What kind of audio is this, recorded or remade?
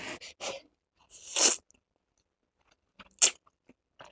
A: recorded